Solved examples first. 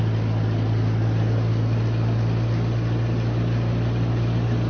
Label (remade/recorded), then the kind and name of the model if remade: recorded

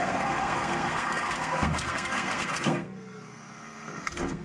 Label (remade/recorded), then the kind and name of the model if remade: remade, codec, SNAC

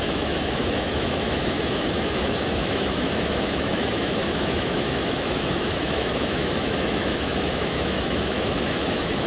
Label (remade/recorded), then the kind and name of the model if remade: remade, autoencoder, DAC-VAE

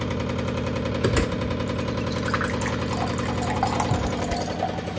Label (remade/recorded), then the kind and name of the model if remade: recorded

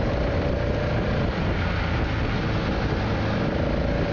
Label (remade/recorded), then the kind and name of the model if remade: recorded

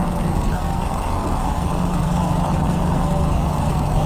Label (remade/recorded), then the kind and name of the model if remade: remade, codec, SNAC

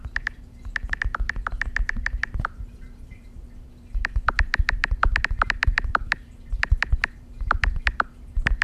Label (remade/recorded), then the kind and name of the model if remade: remade, vocoder, BigVGAN v2